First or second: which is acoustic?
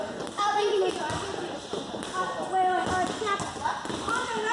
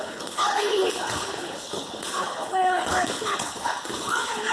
first